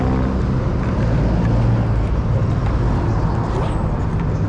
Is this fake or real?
real